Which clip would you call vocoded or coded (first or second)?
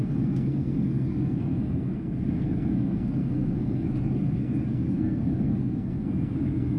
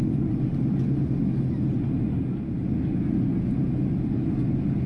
first